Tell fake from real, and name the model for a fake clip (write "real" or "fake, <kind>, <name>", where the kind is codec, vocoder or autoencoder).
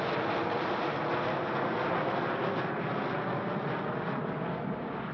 real